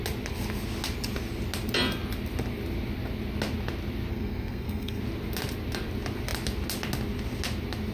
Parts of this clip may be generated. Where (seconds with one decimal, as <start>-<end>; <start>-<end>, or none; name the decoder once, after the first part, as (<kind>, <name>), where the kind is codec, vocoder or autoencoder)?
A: 4.1-5.0 (codec, SNAC)